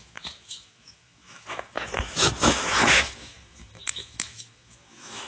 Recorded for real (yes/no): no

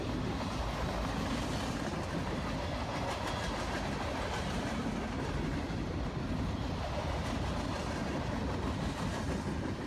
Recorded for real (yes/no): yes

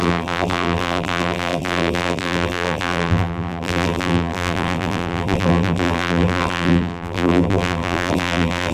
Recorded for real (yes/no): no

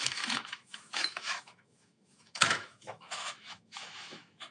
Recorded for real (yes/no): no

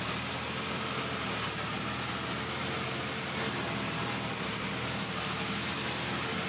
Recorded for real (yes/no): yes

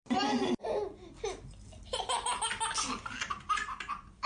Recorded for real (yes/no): yes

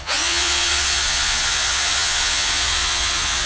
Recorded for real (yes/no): no